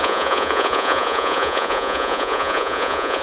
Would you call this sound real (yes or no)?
no